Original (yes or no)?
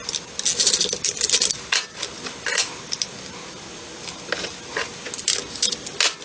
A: yes